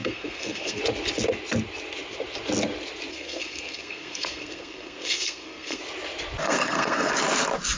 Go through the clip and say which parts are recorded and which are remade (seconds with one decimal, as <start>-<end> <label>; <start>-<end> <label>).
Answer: 0.0-0.8 remade; 0.8-3.1 recorded; 3.1-5.8 remade; 5.8-6.4 recorded; 6.4-7.1 remade; 7.1-7.8 recorded